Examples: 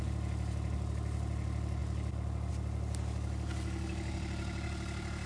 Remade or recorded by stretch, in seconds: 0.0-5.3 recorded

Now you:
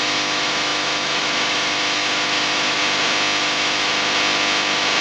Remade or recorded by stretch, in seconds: 0.0-2.8 remade; 2.8-3.4 recorded; 3.4-3.9 remade; 3.9-5.0 recorded

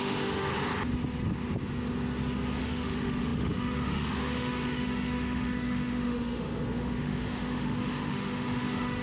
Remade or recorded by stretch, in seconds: 0.0-0.5 remade; 0.5-2.6 recorded; 2.6-9.0 remade

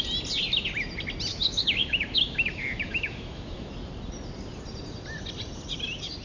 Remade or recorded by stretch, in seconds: 0.0-1.3 recorded; 1.3-3.7 remade; 3.7-6.2 recorded